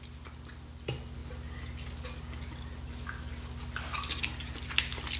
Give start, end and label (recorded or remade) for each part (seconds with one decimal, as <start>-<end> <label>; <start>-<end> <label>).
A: 0.0-5.2 recorded

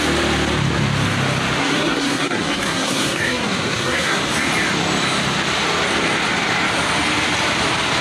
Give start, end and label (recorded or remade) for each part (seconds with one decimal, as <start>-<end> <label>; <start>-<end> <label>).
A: 0.0-1.6 recorded; 1.6-4.2 remade; 4.2-8.0 recorded